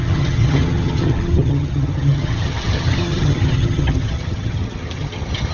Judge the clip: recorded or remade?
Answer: remade